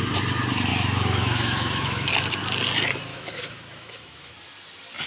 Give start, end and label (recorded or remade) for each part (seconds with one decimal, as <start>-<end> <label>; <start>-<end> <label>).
0.0-0.7 recorded; 0.7-2.1 remade; 2.1-3.1 recorded; 3.1-4.3 remade; 4.3-5.1 recorded